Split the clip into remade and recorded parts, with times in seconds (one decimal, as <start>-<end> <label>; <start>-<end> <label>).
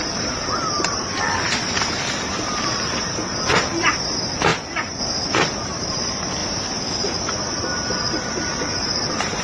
0.0-6.4 remade; 6.4-8.1 recorded; 8.1-9.4 remade